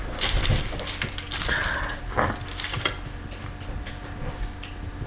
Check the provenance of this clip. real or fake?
real